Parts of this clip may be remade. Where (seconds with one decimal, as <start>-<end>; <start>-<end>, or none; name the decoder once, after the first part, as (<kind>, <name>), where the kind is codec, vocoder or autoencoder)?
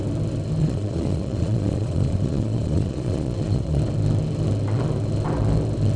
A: 0.6-3.8 (vocoder, Vocos)